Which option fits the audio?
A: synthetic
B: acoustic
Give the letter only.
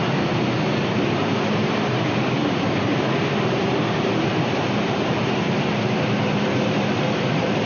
A